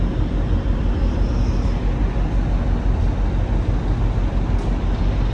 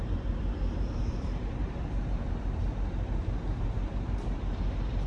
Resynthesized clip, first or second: second